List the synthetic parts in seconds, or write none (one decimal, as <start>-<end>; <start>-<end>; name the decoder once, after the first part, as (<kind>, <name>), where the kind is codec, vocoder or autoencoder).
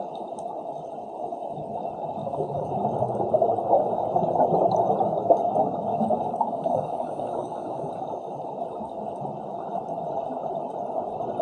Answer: 2.2-2.7 (codec, DAC); 5.9-7.9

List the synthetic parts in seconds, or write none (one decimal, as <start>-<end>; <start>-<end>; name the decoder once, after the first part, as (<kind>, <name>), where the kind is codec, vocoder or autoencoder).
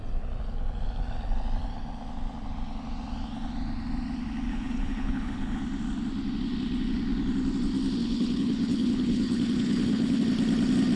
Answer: 4.5-5.6 (codec, HILCodec); 8.0-10.2